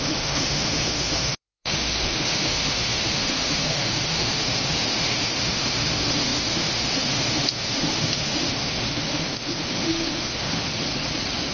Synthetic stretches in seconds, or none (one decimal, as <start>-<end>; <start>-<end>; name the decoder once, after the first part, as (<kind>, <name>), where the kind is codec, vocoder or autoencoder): 0.0-10.7 (autoencoder, DAC-VAE)